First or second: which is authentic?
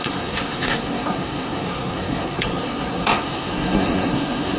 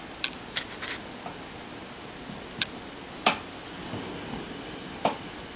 second